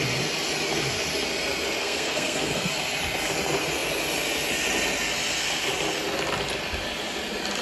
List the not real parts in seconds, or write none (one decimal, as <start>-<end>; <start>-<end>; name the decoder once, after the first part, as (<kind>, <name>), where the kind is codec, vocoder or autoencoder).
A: 1.8-2.7 (codec, SNAC)